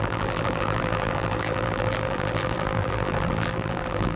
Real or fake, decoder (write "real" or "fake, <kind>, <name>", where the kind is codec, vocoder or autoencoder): fake, vocoder, BigVGAN v2